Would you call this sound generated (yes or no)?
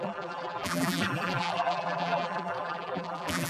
yes